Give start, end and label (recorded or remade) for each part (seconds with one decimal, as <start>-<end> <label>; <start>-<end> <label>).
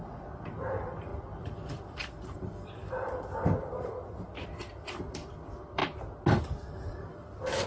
0.0-5.8 remade; 5.8-6.4 recorded; 6.4-7.7 remade